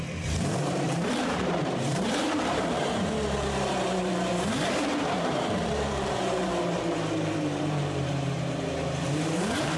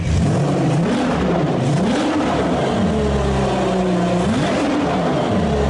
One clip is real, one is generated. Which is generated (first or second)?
first